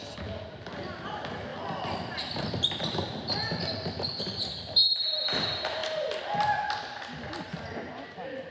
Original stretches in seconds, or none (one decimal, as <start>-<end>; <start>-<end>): 0.0-8.5